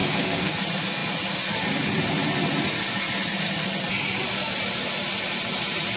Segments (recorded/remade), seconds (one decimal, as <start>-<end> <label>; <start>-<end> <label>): 0.0-0.5 remade; 0.5-6.0 recorded